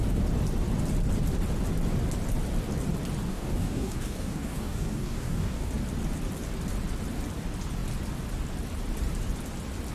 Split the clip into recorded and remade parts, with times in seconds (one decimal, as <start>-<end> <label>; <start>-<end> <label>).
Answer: 0.0-3.3 recorded; 3.3-5.7 remade; 5.7-9.9 recorded